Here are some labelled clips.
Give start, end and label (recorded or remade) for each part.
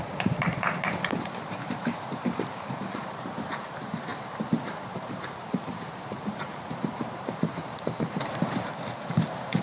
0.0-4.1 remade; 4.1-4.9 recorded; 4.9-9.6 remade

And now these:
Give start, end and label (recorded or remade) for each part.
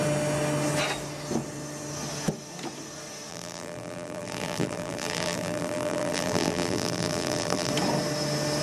0.0-3.3 recorded; 3.3-7.7 remade; 7.7-8.6 recorded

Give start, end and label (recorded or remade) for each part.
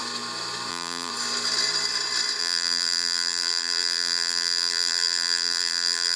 0.0-0.7 recorded; 0.7-1.1 remade; 1.1-2.4 recorded; 2.4-6.2 remade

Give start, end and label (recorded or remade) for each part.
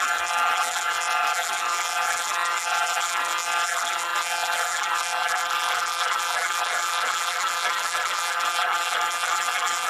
0.0-9.9 remade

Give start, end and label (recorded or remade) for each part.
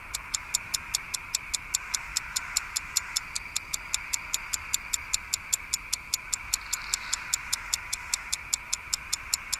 0.0-9.6 recorded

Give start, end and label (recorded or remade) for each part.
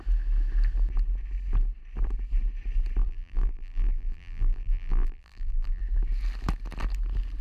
0.0-3.0 recorded; 3.0-5.8 remade; 5.8-7.4 recorded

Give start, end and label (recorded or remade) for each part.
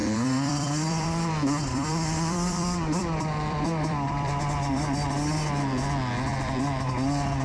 0.0-4.4 remade; 4.4-7.4 recorded